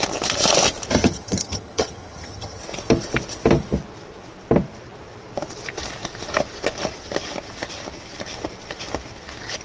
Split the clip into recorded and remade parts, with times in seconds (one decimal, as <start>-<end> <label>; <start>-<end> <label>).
0.0-1.0 recorded; 1.0-2.6 remade; 2.6-9.6 recorded